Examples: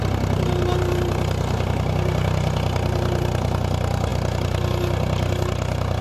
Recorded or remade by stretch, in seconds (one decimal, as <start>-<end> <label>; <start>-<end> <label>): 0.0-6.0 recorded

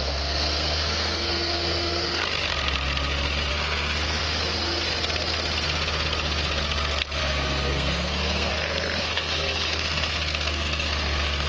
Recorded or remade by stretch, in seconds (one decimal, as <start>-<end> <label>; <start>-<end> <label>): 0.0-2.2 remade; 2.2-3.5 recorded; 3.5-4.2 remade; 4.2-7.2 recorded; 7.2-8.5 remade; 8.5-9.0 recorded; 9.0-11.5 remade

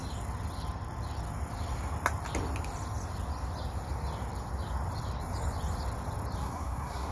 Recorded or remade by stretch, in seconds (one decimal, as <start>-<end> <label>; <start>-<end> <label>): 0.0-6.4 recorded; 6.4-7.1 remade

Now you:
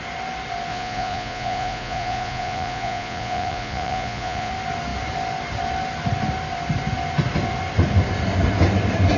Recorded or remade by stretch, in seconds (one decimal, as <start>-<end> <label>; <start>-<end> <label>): 0.0-0.7 recorded; 0.7-4.5 remade; 4.5-9.2 recorded